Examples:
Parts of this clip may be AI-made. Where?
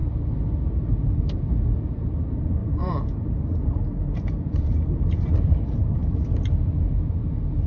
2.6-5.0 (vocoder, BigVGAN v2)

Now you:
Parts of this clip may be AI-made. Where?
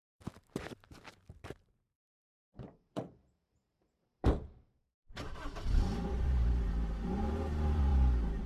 0.0-7.9 (vocoder, BigVGAN v2)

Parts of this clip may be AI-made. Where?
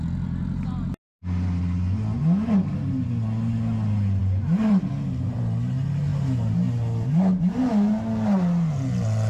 none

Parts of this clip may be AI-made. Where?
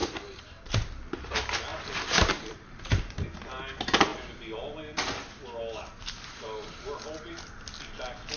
0.0-0.7 (vocoder, BigVGAN v2); 1.7-3.4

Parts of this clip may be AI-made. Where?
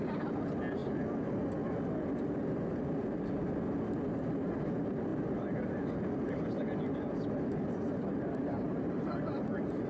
5.1-5.9 (vocoder, BigVGAN v2); 8.1-9.9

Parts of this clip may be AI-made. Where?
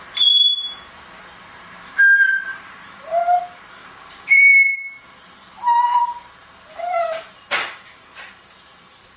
2.5-3.4 (vocoder, BigVGAN v2); 3.8-4.5; 6.4-9.2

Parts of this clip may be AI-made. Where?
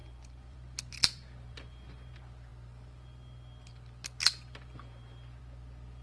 0.0-1.7 (vocoder, BigVGAN v2)